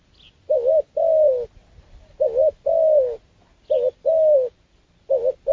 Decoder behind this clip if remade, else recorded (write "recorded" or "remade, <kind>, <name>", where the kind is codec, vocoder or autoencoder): recorded